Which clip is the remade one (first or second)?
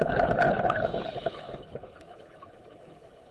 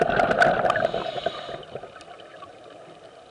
first